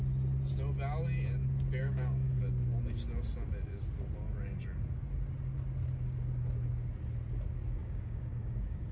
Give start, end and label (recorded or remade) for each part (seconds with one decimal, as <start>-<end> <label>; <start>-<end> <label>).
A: 0.0-1.8 recorded; 1.8-2.4 remade; 2.4-7.8 recorded; 7.8-8.9 remade